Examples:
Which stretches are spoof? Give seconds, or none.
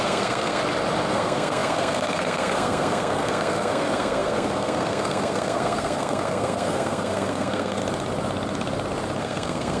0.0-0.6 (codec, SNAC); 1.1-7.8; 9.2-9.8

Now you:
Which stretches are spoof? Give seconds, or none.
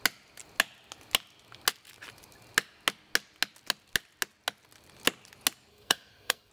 5.7-6.5 (codec, SNAC)